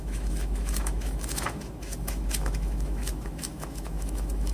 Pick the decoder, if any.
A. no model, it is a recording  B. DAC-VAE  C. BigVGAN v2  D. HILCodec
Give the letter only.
B